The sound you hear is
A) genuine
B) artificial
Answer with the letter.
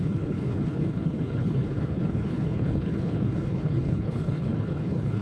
B